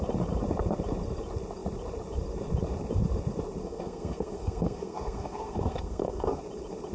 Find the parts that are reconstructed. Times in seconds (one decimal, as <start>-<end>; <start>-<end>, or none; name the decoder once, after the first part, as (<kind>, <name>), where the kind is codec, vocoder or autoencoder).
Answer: 3.6-6.4 (codec, SNAC)